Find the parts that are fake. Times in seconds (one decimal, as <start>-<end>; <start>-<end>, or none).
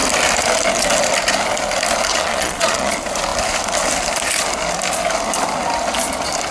2.1-2.9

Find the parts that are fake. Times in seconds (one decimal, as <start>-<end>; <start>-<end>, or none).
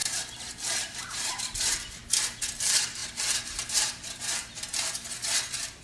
0.0-2.0; 2.6-5.8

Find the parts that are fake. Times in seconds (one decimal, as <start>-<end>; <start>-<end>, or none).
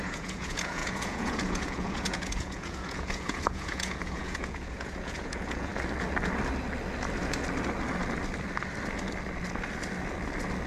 0.0-5.7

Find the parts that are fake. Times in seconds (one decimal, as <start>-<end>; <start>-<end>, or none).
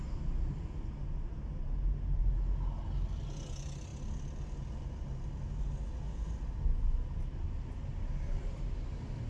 none